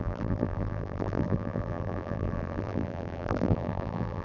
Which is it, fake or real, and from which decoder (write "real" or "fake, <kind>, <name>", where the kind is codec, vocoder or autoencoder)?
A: fake, vocoder, BigVGAN v2